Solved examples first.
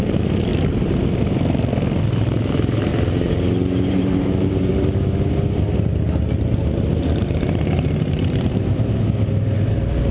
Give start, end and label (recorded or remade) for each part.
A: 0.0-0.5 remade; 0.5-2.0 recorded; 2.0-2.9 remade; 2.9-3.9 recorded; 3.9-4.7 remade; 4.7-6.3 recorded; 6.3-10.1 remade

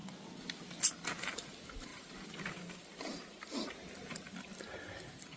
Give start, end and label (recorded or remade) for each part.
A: 0.0-1.9 recorded; 1.9-5.4 remade

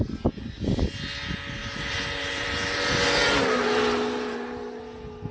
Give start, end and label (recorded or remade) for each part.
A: 0.0-1.6 recorded; 1.6-4.8 remade; 4.8-5.3 recorded